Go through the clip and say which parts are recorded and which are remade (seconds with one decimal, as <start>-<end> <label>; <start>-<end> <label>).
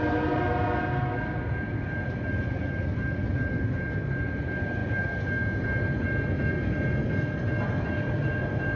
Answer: 0.0-8.8 recorded